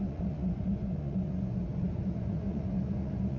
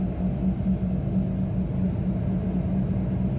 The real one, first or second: second